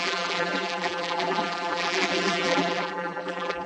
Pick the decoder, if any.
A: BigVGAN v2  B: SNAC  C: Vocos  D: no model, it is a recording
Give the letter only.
A